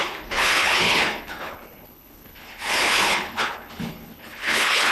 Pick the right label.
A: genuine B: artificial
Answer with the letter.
B